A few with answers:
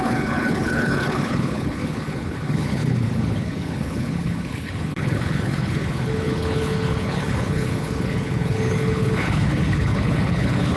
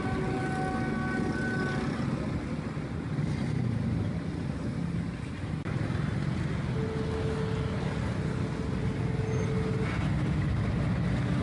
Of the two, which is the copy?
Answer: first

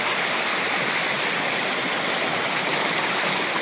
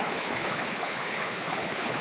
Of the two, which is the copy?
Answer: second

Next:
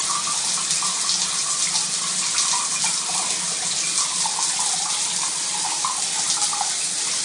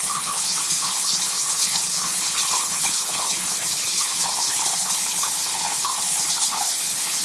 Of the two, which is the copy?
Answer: second